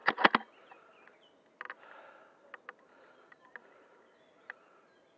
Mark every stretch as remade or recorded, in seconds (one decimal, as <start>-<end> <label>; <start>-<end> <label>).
0.0-5.2 recorded